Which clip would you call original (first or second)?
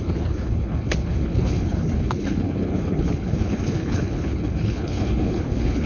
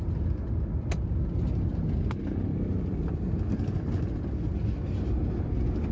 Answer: second